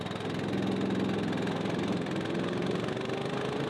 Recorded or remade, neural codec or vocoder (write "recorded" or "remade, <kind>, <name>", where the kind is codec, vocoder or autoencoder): recorded